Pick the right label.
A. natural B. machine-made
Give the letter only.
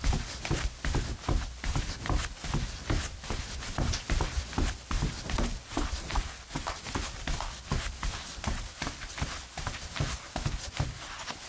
A